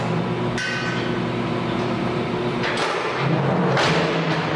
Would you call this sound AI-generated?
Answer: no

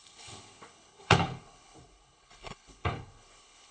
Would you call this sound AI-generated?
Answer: yes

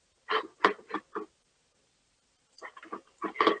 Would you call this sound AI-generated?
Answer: no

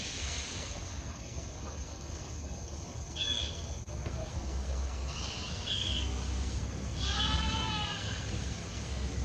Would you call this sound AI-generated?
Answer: yes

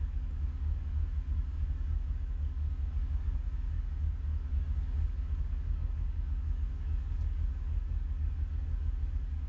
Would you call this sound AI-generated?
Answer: yes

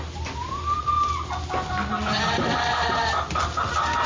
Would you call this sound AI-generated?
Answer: no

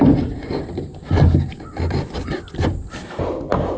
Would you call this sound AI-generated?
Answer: no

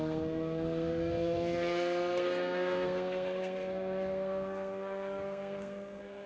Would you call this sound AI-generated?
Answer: yes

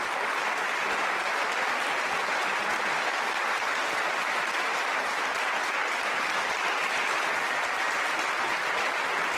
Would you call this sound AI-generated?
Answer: no